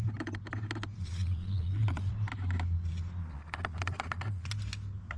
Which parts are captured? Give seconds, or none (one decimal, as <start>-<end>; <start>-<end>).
0.0-1.0; 2.1-3.2; 4.5-5.2